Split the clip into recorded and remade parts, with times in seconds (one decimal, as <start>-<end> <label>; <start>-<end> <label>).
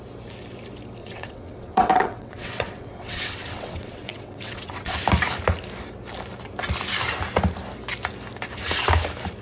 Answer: 0.0-1.0 recorded; 1.0-5.0 remade; 5.0-9.4 recorded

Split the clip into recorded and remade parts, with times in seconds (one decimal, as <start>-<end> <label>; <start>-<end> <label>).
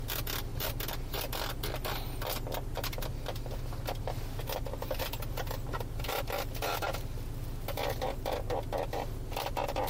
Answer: 0.0-9.9 recorded